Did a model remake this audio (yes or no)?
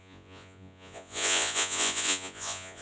yes